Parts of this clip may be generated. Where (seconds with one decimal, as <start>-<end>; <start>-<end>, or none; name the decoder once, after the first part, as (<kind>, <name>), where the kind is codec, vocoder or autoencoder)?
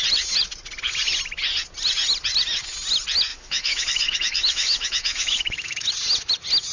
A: 3.3-5.9 (autoencoder, DAC-VAE)